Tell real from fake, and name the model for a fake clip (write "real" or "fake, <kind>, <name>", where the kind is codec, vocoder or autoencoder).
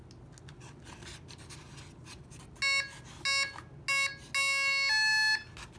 real